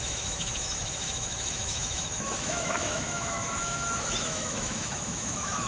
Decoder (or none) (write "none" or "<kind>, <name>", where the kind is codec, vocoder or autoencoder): autoencoder, DAC-VAE